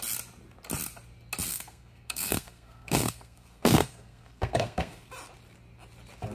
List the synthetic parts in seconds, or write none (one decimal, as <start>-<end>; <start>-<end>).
1.5-5.1